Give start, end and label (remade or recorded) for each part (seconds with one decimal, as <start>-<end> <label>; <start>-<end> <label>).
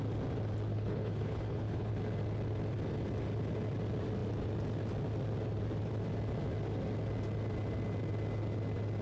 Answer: 0.0-0.7 recorded; 0.7-1.9 remade; 1.9-9.0 recorded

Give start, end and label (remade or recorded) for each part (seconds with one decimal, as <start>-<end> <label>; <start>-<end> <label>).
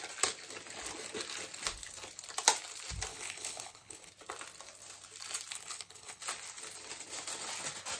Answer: 0.0-3.1 recorded; 3.1-4.1 remade; 4.1-5.5 recorded; 5.5-6.2 remade; 6.2-8.0 recorded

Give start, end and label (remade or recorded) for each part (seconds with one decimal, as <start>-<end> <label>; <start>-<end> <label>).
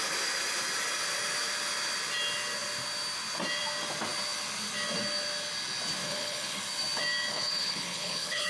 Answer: 0.0-6.0 recorded; 6.0-6.6 remade; 6.6-7.3 recorded; 7.3-8.5 remade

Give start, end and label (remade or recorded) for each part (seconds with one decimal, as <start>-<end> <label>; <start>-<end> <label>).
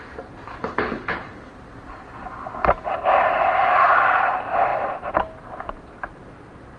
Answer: 0.0-0.6 recorded; 0.6-1.5 remade; 1.5-6.8 recorded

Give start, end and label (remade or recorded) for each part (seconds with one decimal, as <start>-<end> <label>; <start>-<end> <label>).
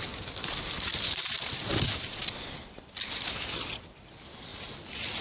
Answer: 0.0-5.2 recorded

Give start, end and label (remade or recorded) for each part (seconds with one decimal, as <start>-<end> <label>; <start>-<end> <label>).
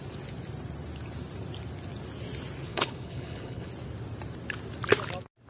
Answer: 0.0-2.7 recorded; 2.7-3.7 remade; 3.7-5.5 recorded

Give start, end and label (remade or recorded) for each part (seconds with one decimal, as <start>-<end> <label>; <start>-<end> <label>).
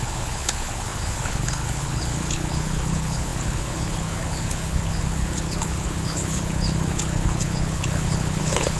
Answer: 0.0-8.8 remade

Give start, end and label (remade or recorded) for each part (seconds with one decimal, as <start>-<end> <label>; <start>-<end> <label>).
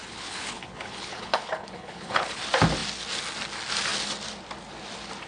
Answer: 0.0-2.4 remade; 2.4-5.3 recorded